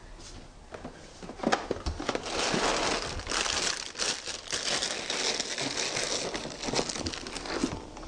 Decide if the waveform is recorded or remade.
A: recorded